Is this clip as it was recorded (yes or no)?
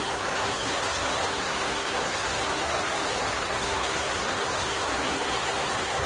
no